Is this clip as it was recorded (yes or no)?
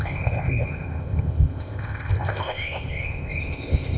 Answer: no